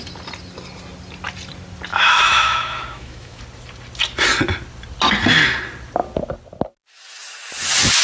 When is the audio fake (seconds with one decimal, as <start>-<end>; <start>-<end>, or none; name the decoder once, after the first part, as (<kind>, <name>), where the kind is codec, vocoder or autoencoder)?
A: 1.9-3.4 (autoencoder, DAC-VAE)